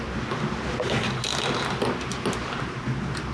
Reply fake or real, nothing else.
real